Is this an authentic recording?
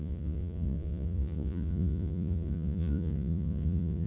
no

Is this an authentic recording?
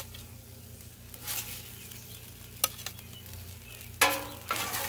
yes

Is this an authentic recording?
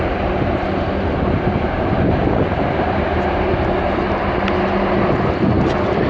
yes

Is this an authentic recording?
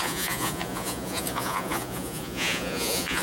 no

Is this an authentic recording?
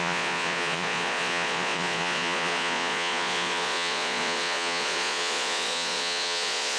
no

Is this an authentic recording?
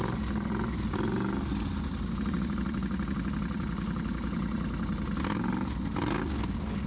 yes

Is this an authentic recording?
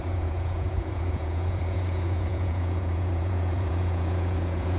no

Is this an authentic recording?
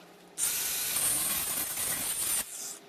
yes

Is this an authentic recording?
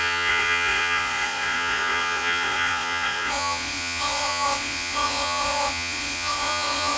no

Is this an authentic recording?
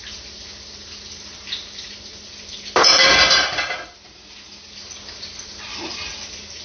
yes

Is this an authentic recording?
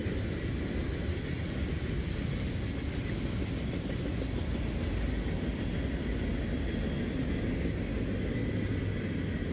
yes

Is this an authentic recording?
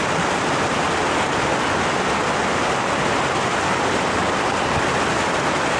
yes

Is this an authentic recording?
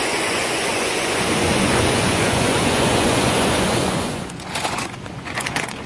no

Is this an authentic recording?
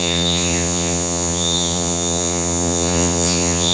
no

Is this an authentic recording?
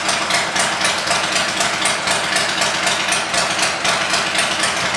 yes